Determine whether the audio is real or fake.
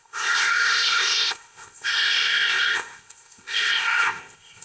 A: fake